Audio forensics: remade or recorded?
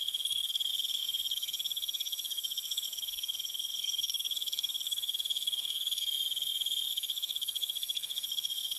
remade